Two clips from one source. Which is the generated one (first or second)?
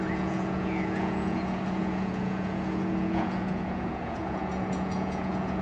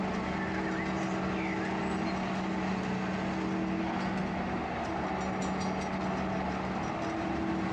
first